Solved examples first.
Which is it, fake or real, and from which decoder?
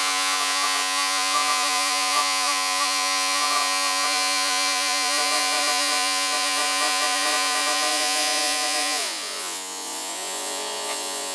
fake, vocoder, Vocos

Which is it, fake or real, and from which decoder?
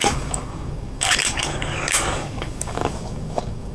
fake, codec, DAC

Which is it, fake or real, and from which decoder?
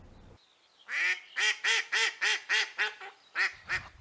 real